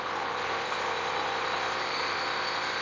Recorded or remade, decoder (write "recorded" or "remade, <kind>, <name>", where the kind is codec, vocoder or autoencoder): recorded